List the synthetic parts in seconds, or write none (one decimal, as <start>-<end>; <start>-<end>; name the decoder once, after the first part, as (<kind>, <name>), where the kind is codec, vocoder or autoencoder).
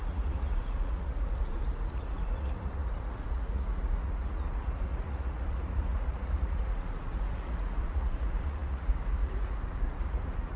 0.0-10.6 (vocoder, Vocos)